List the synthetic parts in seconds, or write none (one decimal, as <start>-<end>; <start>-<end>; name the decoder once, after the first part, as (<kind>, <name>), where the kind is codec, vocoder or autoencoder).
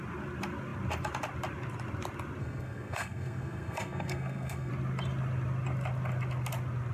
2.4-4.7 (codec, SNAC)